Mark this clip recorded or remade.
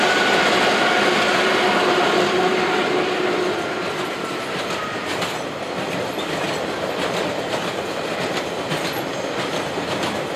recorded